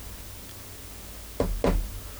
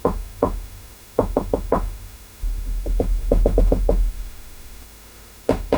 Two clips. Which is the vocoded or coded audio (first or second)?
second